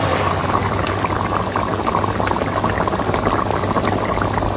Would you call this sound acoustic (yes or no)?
yes